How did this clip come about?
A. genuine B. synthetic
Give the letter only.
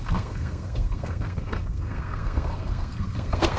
B